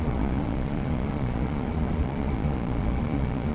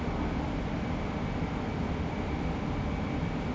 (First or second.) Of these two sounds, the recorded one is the second